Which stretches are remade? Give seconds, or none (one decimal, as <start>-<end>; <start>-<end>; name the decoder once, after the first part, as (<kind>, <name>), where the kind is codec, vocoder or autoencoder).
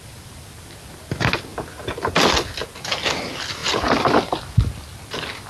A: none